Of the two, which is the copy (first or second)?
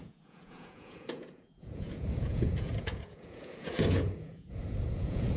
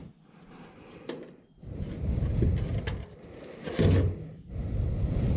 first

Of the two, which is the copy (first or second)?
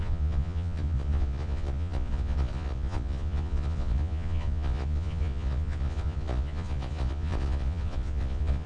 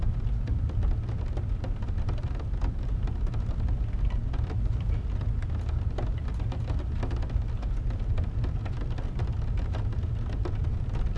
first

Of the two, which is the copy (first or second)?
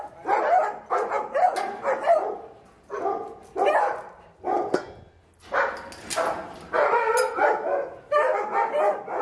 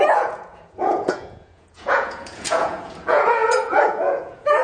second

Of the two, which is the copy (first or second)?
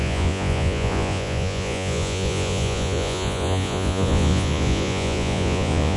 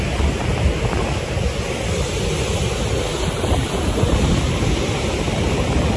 first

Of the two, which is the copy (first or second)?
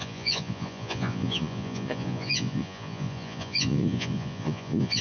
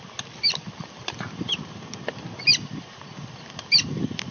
first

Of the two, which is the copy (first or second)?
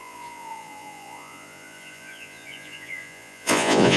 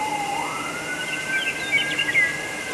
first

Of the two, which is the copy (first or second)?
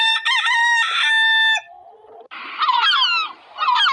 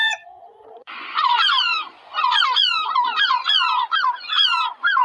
second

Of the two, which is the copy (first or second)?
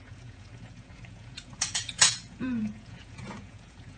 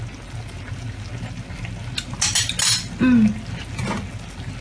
first